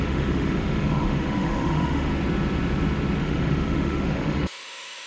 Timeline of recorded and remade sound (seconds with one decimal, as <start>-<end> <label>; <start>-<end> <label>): 0.0-2.1 remade; 2.1-3.2 recorded; 3.2-5.1 remade